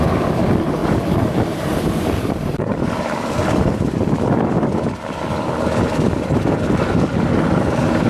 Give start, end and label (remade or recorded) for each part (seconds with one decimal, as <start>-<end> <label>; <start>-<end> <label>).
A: 0.0-8.1 remade